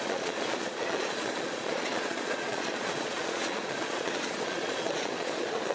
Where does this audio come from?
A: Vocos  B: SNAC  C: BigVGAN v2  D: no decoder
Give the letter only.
A